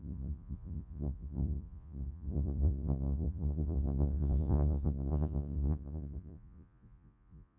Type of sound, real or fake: fake